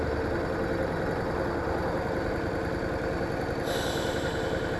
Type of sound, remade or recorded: recorded